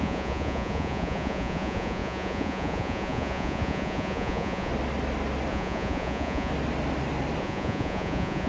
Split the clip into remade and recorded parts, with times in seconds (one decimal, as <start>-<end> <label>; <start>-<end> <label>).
0.0-4.7 remade; 4.7-5.5 recorded; 5.5-6.5 remade; 6.5-7.4 recorded; 7.4-8.5 remade